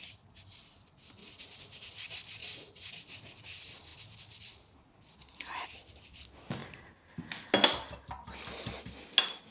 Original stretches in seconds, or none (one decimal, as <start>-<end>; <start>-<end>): 0.0-1.2; 1.9-2.4; 2.9-9.5